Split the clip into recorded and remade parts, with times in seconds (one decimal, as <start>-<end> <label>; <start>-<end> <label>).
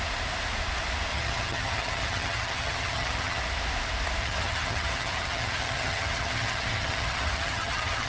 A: 0.0-1.1 recorded; 1.1-3.4 remade; 3.4-4.2 recorded; 4.2-8.1 remade